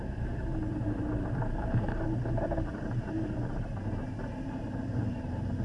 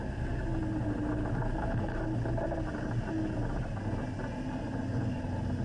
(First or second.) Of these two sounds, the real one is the second